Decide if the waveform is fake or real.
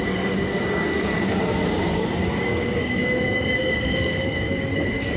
fake